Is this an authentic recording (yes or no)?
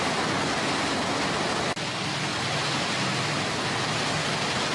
yes